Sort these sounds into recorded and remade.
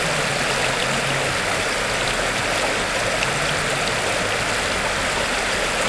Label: recorded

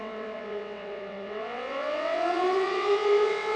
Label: remade